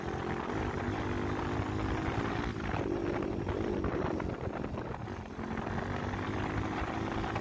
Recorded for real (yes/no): yes